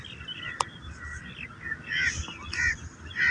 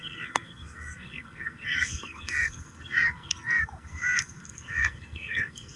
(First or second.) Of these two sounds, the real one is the first